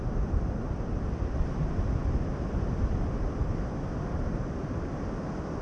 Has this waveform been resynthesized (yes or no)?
no